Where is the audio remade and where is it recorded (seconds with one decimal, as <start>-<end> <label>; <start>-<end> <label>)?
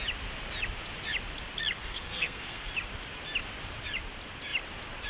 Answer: 0.0-1.8 recorded; 1.8-2.7 remade; 2.7-5.1 recorded